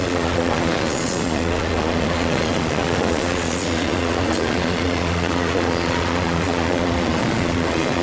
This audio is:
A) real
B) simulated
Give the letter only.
B